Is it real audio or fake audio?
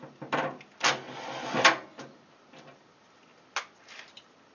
real